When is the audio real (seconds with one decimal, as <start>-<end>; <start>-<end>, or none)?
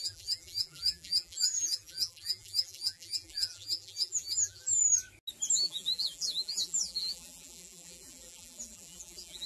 4.8-5.5